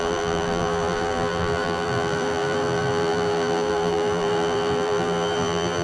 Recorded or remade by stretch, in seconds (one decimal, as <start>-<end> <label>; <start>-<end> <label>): 0.0-5.8 remade